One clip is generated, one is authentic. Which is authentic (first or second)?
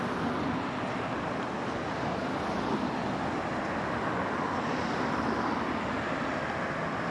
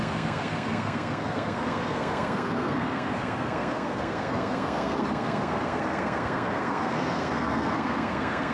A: first